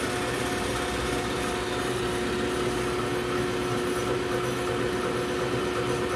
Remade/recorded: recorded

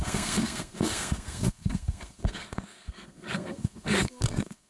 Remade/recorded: remade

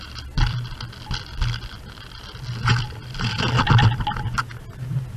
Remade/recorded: recorded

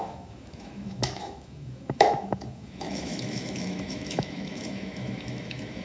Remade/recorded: remade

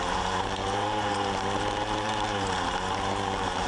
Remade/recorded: remade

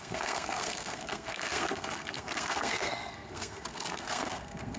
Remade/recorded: remade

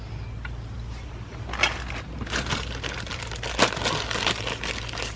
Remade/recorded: remade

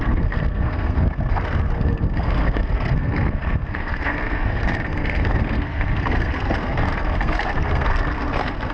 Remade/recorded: remade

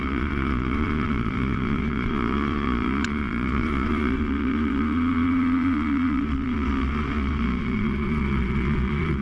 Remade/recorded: remade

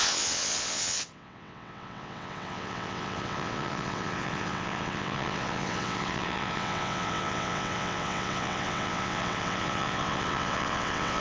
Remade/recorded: remade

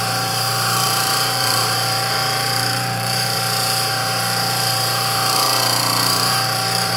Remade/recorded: remade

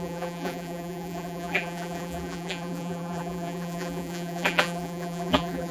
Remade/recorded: remade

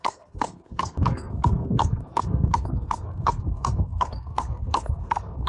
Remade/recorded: remade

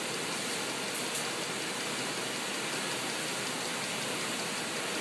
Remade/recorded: recorded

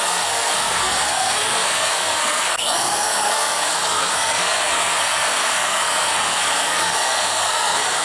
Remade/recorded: remade